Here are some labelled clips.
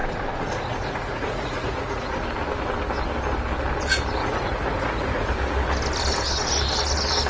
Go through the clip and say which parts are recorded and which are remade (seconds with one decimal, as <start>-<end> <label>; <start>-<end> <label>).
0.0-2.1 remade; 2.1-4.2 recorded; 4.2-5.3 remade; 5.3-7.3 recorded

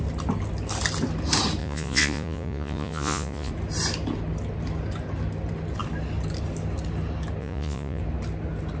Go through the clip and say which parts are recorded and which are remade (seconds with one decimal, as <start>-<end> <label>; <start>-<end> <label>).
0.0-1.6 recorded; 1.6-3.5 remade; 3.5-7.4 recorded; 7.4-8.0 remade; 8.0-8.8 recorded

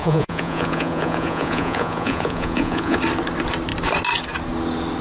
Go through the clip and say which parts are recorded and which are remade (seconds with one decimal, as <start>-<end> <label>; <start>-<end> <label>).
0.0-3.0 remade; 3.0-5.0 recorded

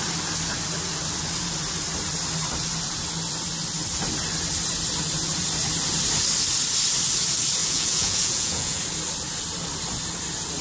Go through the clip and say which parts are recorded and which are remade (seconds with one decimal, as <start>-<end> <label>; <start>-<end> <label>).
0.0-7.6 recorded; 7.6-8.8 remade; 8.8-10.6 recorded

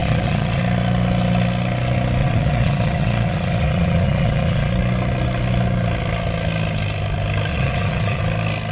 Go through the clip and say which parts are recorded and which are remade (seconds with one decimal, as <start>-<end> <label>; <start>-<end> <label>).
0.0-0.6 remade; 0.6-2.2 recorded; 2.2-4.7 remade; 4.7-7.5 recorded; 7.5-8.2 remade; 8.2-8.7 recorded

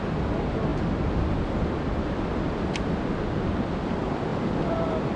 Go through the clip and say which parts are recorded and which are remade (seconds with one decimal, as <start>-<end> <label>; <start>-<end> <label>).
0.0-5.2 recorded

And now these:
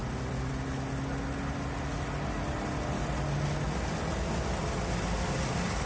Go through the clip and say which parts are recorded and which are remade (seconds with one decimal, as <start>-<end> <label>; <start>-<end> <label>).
0.0-5.9 recorded

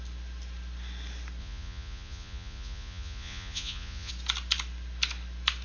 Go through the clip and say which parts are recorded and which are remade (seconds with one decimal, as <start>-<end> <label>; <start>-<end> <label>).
0.0-1.4 recorded; 1.4-4.1 remade; 4.1-5.6 recorded